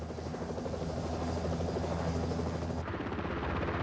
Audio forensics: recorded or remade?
recorded